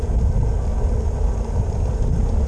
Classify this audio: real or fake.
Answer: real